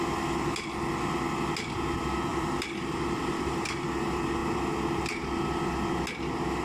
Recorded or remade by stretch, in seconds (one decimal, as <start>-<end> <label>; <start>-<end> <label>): 0.0-2.3 recorded; 2.3-3.8 remade; 3.8-6.6 recorded